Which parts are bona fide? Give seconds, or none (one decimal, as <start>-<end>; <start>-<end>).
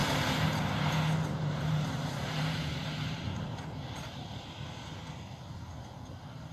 0.0-1.3; 3.5-6.5